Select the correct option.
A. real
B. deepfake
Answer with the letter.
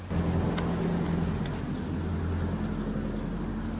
A